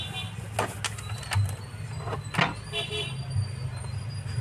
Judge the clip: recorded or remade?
recorded